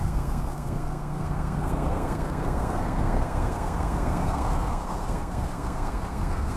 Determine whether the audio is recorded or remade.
remade